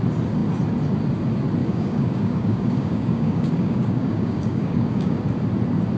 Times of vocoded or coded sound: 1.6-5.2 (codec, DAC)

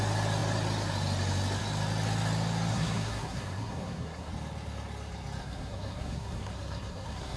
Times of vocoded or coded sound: 2.7-4.3 (codec, SNAC); 5.4-7.4